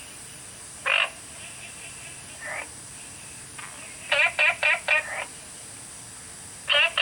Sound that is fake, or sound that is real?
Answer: real